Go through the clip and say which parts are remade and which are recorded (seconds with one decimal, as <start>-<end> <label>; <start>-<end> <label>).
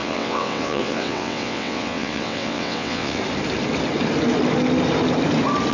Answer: 0.0-3.2 remade; 3.2-5.7 recorded